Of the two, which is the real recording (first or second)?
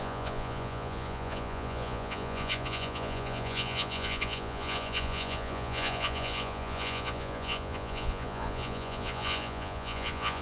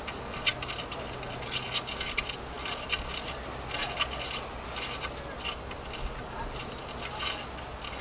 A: second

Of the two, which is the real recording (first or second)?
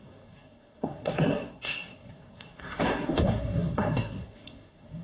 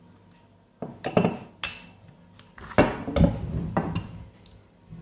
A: second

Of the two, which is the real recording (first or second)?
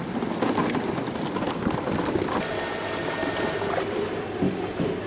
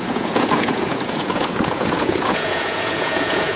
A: first